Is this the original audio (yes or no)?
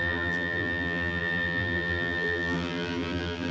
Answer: no